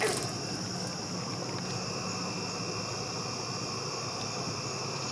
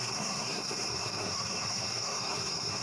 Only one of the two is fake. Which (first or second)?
second